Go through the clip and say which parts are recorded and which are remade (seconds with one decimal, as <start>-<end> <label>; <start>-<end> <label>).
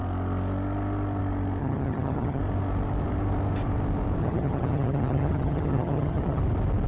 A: 0.0-1.6 recorded; 1.6-2.4 remade; 2.4-4.2 recorded; 4.2-6.4 remade; 6.4-6.9 recorded